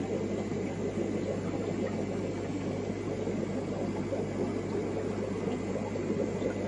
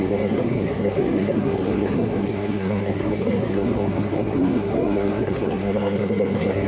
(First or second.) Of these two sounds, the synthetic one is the second